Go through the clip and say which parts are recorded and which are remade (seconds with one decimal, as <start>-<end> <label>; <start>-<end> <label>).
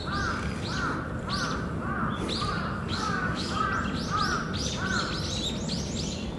0.0-2.9 recorded; 2.9-3.6 remade; 3.6-6.4 recorded